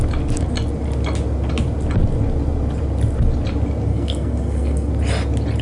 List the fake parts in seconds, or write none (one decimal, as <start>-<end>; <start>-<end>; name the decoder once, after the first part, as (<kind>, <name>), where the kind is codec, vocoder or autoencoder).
3.9-4.9 (codec, SNAC)